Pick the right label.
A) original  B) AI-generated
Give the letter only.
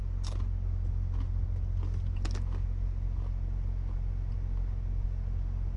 A